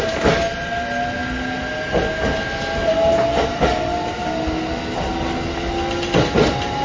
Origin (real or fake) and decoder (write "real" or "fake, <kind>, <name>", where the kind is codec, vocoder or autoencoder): real